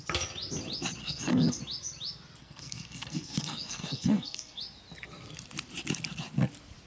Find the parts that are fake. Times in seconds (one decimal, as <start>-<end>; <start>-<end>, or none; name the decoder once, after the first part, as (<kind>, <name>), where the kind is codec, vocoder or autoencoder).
1.0-1.6 (codec, SNAC); 2.4-4.6